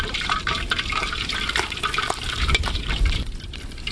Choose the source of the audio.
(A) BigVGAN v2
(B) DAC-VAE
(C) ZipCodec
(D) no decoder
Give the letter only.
A